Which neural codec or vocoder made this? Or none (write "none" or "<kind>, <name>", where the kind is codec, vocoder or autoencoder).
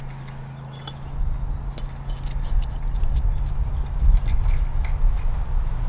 none